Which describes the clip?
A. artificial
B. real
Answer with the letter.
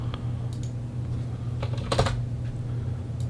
B